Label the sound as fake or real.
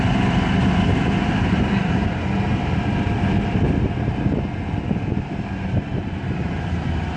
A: real